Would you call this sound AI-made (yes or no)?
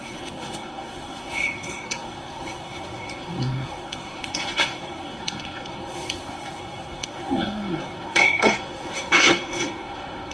yes